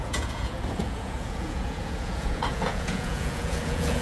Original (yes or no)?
no